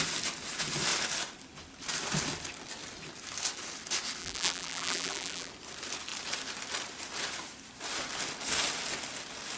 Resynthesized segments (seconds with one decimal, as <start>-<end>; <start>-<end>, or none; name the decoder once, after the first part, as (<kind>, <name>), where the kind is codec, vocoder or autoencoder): 4.2-5.5 (vocoder, BigVGAN v2)